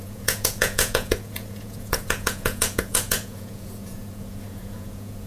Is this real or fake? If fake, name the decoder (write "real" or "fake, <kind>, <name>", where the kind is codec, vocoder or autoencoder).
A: fake, vocoder, Vocos